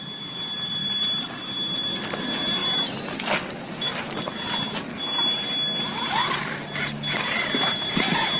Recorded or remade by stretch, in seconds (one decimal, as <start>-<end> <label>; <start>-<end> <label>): 0.0-2.6 remade; 2.6-7.1 recorded; 7.1-8.4 remade